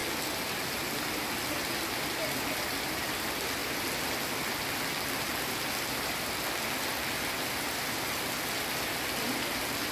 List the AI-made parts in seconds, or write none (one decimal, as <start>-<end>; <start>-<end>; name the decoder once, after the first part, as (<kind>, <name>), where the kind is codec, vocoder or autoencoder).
none